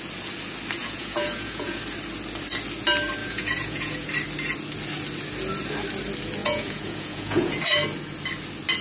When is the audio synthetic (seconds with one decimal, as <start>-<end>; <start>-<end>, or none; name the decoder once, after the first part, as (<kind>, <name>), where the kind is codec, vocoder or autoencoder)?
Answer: 0.8-1.8 (vocoder, Vocos); 3.2-4.1; 6.4-7.6